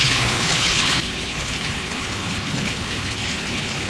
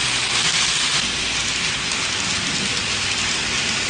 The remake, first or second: first